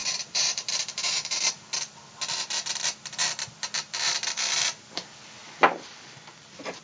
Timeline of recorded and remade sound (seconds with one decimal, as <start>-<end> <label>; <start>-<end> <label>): 0.0-1.4 remade; 1.4-6.8 recorded